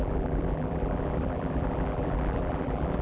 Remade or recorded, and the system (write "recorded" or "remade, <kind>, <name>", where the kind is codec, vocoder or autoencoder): remade, vocoder, BigVGAN v2